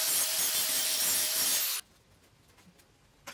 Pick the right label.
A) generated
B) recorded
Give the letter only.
B